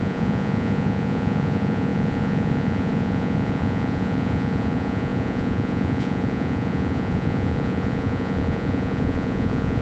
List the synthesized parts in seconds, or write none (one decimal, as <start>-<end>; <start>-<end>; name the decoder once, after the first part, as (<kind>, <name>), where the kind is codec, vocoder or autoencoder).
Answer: 0.0-9.8 (vocoder, Vocos)